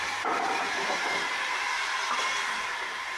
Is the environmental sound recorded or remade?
remade